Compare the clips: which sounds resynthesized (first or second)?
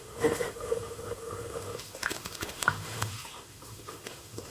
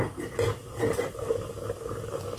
first